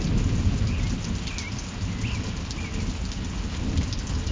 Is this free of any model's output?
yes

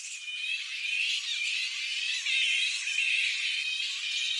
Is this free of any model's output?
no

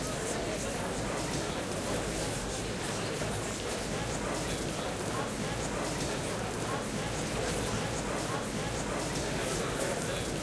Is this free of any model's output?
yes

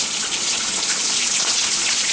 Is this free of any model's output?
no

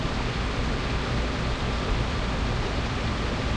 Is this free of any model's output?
yes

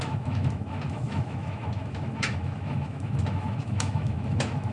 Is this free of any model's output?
no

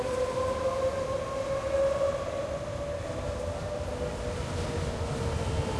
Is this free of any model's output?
yes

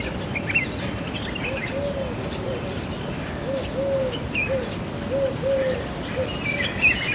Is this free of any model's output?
yes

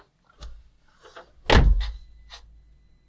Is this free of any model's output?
yes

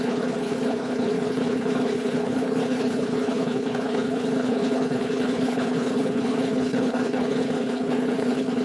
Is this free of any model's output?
no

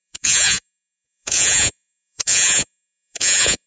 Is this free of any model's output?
no